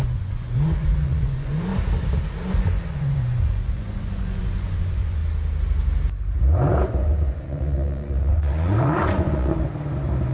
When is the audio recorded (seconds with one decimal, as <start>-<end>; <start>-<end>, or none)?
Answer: 1.7-2.5; 5.2-7.0; 9.5-10.3